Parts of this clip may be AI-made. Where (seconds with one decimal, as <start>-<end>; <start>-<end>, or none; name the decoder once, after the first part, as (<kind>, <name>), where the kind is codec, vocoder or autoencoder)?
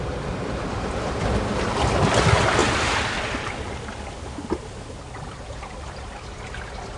none